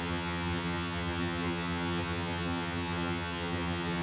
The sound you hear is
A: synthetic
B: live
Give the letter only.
A